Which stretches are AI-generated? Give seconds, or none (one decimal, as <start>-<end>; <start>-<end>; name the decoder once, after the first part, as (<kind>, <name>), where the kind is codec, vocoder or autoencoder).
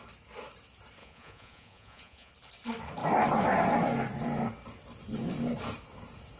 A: 1.0-2.3 (vocoder, Vocos)